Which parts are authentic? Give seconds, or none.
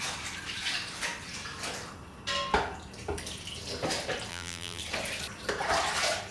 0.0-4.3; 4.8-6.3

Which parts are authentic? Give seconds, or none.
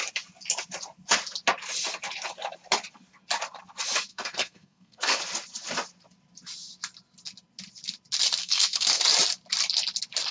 0.0-4.1; 5.2-8.4; 9.0-10.3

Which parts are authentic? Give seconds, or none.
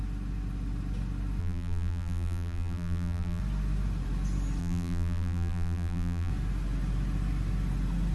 0.0-1.4; 3.4-4.6; 6.3-8.1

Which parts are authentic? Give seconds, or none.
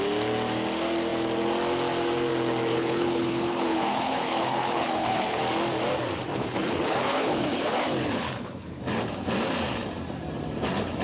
0.0-2.7; 5.4-6.3; 8.8-11.0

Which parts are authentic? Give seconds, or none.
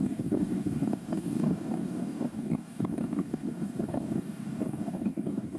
none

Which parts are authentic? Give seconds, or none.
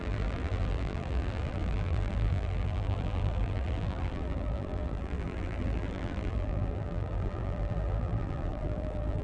none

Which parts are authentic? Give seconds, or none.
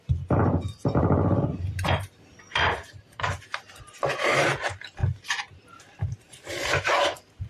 none